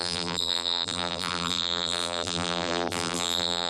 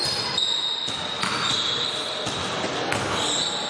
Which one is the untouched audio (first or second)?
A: second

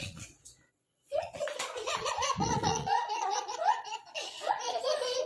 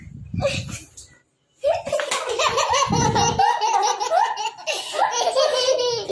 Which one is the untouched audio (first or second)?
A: second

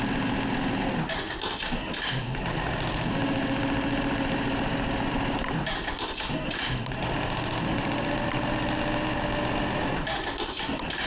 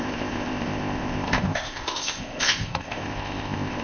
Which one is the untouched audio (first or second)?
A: first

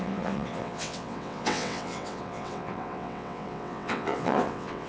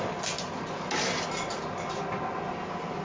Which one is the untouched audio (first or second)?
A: second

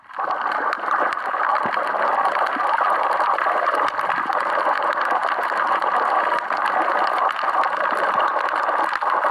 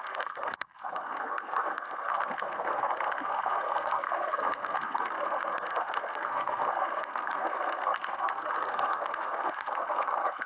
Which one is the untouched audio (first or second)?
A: first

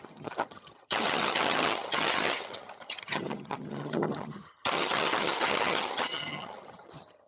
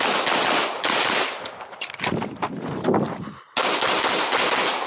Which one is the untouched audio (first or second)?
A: second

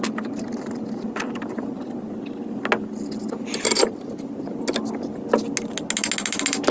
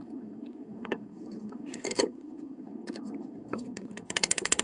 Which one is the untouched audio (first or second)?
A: first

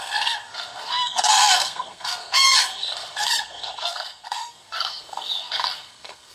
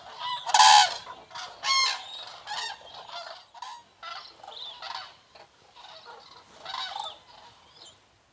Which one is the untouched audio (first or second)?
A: second